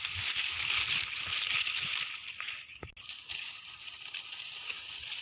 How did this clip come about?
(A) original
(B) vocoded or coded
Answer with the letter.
A